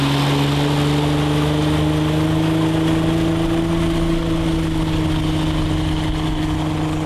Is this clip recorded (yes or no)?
yes